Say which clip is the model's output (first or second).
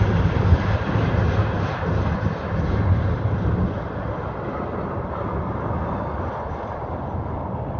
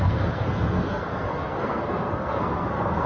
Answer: second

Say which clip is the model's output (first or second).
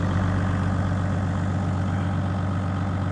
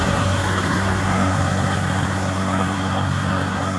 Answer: second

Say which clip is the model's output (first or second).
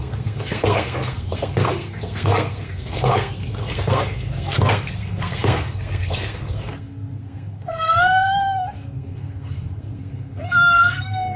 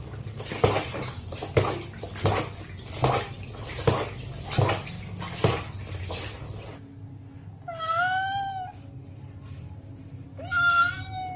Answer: first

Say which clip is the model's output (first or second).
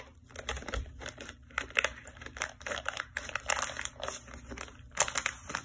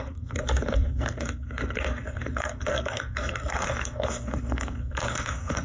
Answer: second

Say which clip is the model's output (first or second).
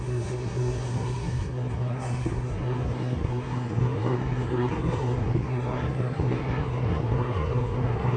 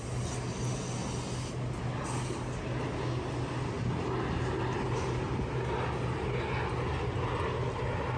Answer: first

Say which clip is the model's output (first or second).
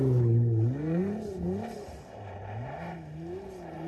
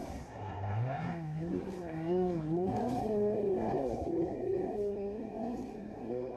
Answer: second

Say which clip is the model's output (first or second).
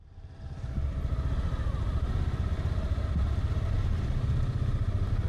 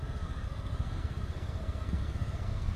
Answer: second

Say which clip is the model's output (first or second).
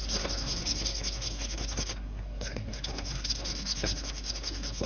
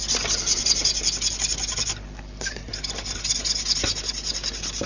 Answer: first